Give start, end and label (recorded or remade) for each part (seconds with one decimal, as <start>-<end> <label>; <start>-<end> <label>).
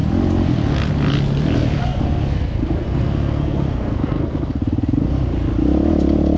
0.0-1.9 recorded; 1.9-4.5 remade; 4.5-6.4 recorded